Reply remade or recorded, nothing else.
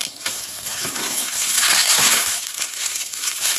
remade